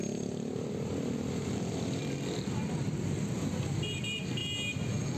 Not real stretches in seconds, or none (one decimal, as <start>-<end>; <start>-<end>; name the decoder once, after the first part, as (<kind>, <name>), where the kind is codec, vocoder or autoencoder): 0.0-2.0 (vocoder, BigVGAN v2); 3.2-4.4